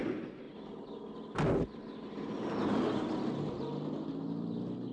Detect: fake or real real